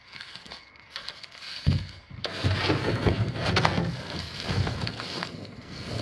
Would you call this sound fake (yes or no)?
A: yes